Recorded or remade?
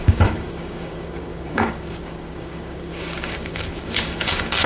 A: remade